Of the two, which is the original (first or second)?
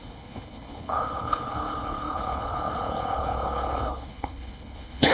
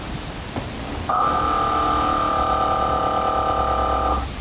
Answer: second